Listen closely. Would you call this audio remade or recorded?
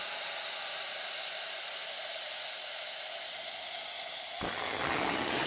recorded